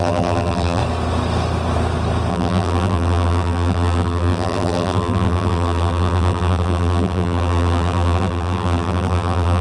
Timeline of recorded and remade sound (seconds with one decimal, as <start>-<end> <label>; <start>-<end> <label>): 0.0-0.8 remade; 0.8-2.3 recorded; 2.3-9.6 remade